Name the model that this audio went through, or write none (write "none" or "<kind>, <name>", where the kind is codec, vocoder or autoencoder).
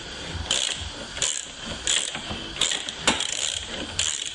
none